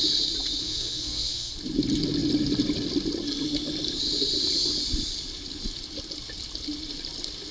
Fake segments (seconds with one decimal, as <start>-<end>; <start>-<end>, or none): 0.6-1.5

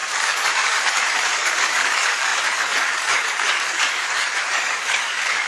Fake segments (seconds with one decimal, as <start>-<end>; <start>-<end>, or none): 0.0-5.5

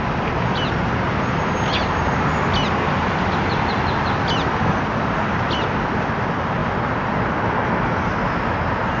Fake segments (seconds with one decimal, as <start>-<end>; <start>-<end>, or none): none

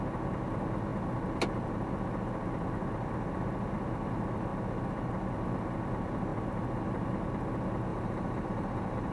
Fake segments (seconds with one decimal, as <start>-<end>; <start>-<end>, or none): 7.9-9.1

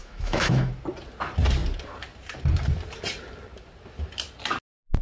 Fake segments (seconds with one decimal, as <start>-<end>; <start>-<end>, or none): 0.0-0.7